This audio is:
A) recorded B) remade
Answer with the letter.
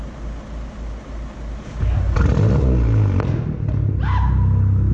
A